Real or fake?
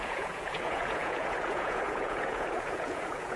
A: fake